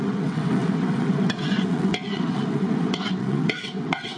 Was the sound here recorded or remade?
remade